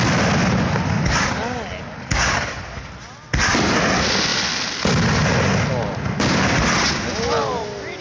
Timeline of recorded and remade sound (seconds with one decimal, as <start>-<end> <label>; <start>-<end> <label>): 0.0-8.0 recorded